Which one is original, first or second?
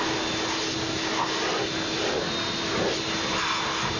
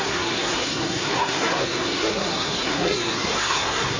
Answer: first